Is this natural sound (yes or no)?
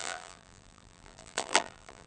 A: no